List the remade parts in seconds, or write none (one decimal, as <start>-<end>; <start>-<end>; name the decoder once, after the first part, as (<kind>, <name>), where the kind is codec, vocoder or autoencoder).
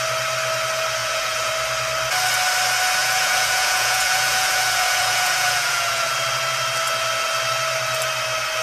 1.0-1.5 (vocoder, Vocos); 3.0-6.1